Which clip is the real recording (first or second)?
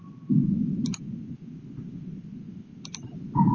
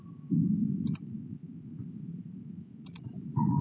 first